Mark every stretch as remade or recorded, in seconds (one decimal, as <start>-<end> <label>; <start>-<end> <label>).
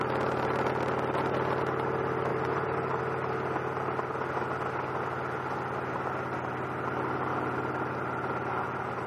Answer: 0.0-2.3 recorded; 2.3-3.0 remade; 3.0-9.1 recorded